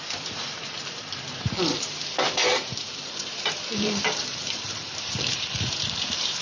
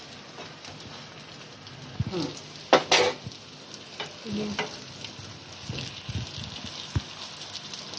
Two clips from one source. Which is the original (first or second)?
second